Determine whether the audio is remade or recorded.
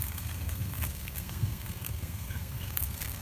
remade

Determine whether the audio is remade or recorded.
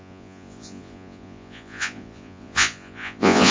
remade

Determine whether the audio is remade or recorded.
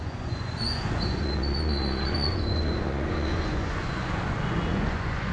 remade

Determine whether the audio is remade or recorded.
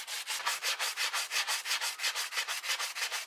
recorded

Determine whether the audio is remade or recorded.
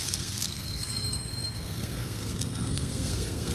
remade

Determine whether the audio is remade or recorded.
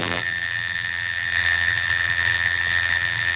remade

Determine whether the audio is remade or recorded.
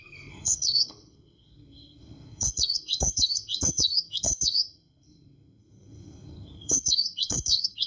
remade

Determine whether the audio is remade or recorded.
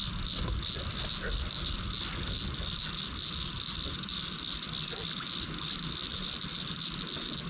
recorded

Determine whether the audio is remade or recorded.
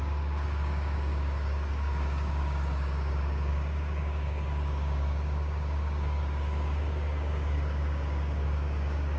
remade